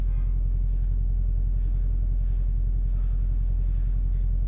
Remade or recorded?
recorded